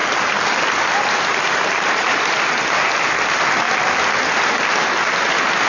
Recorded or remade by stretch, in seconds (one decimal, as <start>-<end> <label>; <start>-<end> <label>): 0.0-5.7 recorded